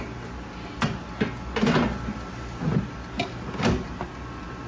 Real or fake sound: real